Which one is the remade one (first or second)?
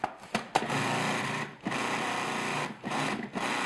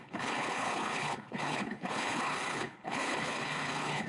second